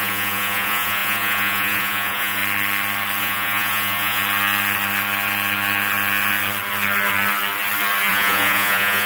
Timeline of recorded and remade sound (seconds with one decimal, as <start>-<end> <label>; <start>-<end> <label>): 0.0-2.4 remade; 2.4-3.2 recorded; 3.2-4.2 remade; 4.2-8.1 recorded; 8.1-9.1 remade